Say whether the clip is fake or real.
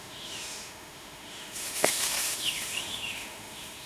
fake